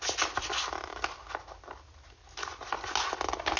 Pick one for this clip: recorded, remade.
recorded